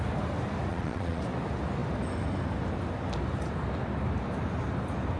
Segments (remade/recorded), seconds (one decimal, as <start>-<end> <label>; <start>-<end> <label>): 0.0-0.7 recorded; 0.7-1.2 remade; 1.2-5.2 recorded